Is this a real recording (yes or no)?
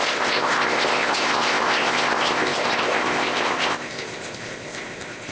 no